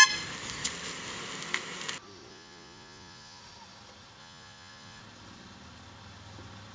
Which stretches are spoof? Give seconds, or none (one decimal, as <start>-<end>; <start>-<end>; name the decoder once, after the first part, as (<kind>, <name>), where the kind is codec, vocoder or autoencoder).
2.3-3.4 (vocoder, Vocos); 4.2-5.0